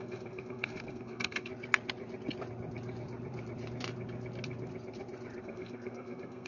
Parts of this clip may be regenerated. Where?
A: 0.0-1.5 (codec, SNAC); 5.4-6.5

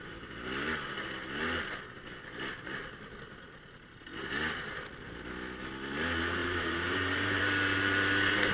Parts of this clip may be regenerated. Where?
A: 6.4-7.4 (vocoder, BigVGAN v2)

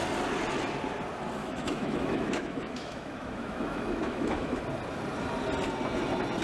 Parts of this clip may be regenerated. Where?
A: 1.4-4.6 (autoencoder, DAC-VAE)